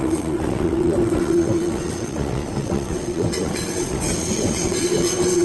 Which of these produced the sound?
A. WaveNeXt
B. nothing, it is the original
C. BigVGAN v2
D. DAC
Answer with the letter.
A